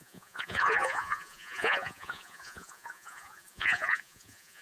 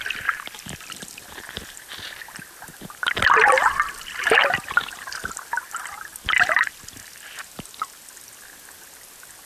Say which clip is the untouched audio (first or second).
second